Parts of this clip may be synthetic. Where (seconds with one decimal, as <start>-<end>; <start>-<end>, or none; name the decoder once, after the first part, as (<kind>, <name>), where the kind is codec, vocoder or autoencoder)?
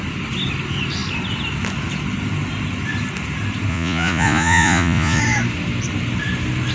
3.7-5.2 (vocoder, Vocos)